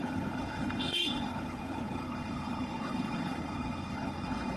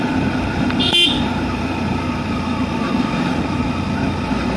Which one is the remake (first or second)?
first